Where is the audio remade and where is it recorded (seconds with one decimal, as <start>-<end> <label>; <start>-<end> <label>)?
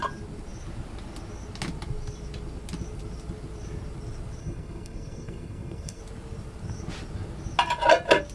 0.0-4.4 recorded; 4.4-6.0 remade; 6.0-8.3 recorded